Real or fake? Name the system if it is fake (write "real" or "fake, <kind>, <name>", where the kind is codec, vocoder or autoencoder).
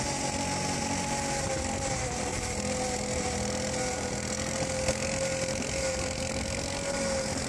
real